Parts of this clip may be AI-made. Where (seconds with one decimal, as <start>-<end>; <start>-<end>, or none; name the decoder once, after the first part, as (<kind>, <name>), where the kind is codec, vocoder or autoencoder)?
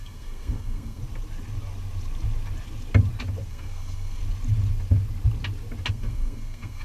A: 0.0-1.0 (codec, SNAC); 3.5-4.2; 5.9-6.8